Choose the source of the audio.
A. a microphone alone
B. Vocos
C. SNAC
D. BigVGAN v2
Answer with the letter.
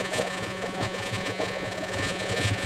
B